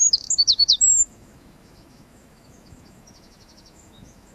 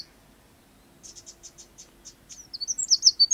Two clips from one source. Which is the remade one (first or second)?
first